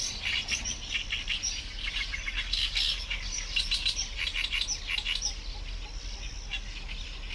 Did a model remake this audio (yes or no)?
no